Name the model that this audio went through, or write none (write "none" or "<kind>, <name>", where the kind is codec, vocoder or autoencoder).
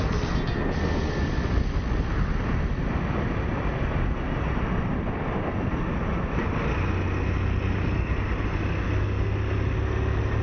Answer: none